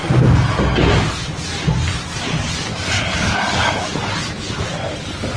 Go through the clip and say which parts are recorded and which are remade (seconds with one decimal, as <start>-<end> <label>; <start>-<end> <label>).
0.0-2.7 recorded; 2.7-3.7 remade; 3.7-5.4 recorded